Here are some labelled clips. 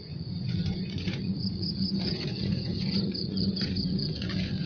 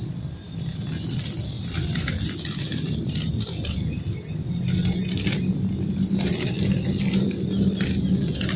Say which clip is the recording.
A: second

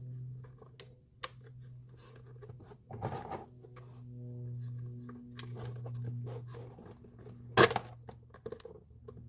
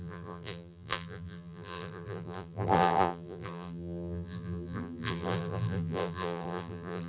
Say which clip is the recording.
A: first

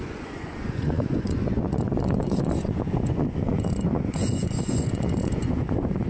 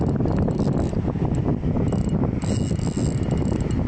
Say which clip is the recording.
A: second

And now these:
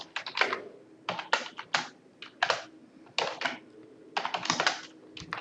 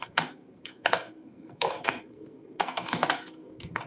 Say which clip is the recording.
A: first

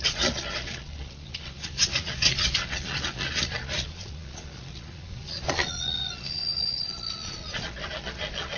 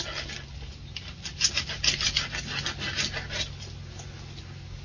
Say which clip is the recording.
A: second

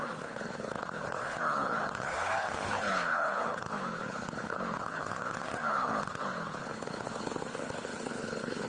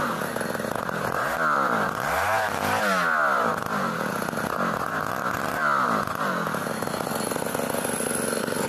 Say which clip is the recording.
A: second